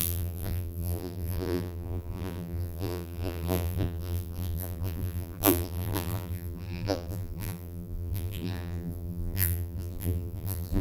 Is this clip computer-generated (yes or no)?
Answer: yes